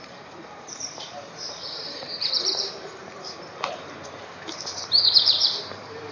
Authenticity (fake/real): fake